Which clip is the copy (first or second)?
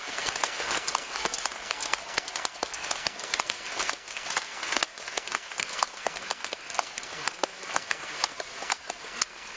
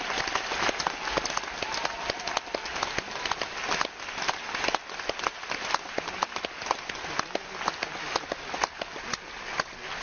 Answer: first